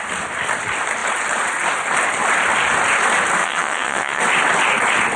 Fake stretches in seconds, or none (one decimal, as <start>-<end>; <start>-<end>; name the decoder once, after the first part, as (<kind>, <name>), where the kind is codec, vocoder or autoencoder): 3.4-4.2 (vocoder, WaveNeXt)